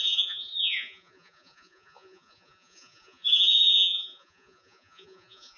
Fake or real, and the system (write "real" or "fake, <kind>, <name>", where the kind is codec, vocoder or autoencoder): fake, vocoder, Vocos